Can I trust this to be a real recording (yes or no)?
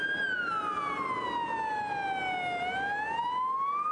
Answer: yes